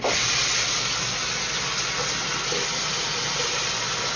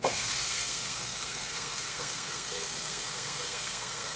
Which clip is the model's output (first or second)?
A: second